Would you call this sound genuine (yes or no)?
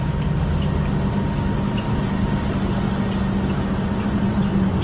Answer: yes